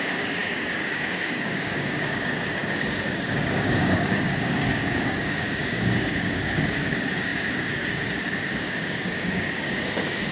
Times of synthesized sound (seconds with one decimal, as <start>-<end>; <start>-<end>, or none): 0.0-10.3